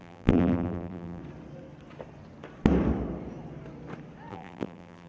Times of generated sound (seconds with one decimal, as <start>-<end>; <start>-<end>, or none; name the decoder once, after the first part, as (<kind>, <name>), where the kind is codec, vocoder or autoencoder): 0.0-1.2 (vocoder, BigVGAN v2); 4.3-5.1